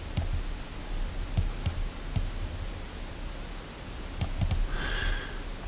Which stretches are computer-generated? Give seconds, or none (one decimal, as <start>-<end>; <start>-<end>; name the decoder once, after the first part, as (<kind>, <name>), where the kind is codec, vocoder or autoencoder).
none